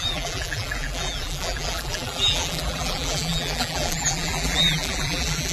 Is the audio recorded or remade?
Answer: remade